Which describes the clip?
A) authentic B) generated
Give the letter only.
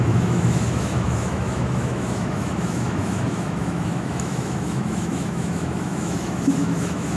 B